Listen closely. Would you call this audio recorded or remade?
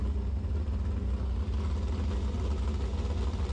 recorded